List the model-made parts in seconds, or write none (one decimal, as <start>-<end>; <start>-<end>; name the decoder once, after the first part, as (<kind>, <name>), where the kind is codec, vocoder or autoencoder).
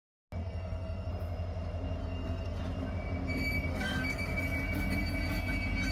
0.4-1.1 (codec, SNAC); 2.0-2.6; 3.7-4.4